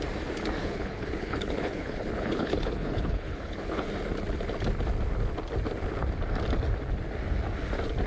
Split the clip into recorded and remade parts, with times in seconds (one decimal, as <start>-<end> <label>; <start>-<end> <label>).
0.0-0.6 recorded; 0.6-3.9 remade; 3.9-8.1 recorded